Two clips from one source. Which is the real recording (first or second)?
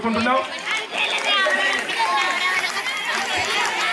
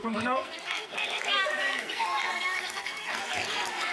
first